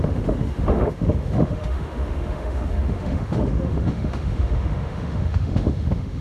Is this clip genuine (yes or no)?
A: no